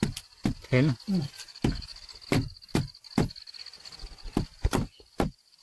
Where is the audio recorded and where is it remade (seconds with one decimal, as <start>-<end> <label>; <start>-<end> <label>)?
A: 0.0-5.6 recorded